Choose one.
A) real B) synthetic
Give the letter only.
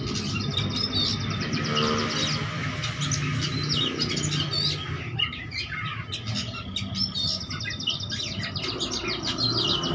A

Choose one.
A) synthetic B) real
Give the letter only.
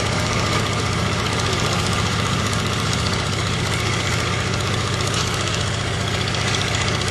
A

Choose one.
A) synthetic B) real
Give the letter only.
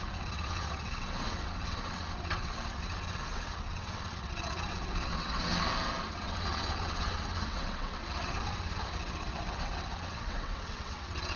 A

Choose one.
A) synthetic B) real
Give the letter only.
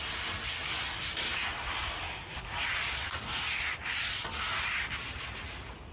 B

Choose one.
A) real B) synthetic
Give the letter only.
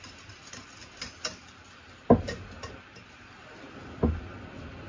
A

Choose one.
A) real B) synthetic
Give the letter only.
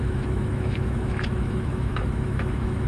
B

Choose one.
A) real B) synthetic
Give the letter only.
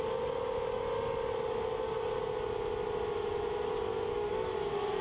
A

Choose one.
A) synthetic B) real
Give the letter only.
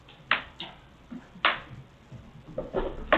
B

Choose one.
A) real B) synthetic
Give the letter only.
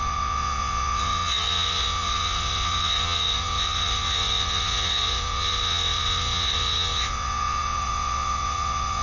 B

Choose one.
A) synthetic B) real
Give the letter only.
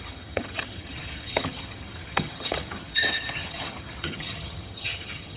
A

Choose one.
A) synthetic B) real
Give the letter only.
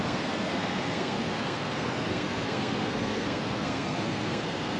A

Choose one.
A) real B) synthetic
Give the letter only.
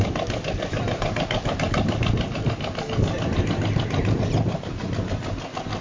A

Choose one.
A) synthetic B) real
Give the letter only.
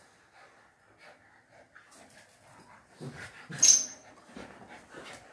B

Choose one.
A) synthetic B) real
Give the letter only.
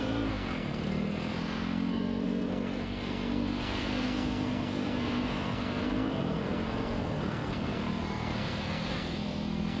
A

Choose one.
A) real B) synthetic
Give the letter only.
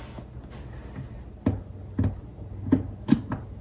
A